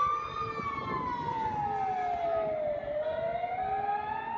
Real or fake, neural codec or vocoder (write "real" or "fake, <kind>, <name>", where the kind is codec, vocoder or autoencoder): real